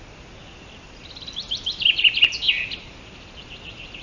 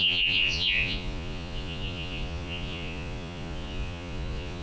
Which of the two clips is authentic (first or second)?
first